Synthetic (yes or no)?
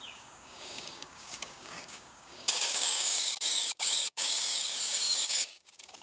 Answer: yes